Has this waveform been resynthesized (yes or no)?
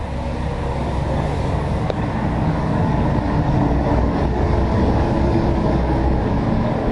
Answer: yes